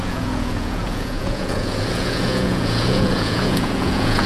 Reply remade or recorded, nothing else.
remade